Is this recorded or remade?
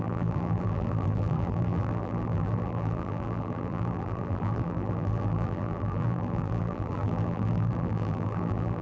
remade